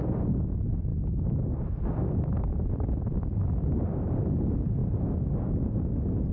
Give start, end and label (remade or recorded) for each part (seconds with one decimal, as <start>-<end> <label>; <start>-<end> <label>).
0.0-0.9 remade; 0.9-1.6 recorded; 1.6-4.8 remade; 4.8-6.3 recorded

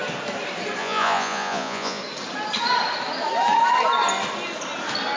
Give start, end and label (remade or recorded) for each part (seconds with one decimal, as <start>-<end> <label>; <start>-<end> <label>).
0.0-0.8 recorded; 0.8-2.0 remade; 2.0-5.2 recorded